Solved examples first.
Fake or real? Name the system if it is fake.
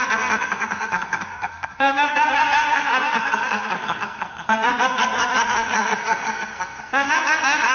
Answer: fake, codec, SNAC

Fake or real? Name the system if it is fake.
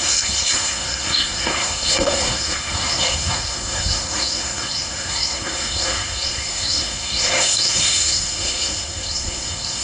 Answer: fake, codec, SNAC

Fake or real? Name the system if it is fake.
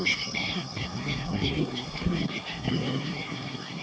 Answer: fake, codec, SNAC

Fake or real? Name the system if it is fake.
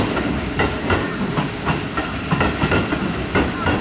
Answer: real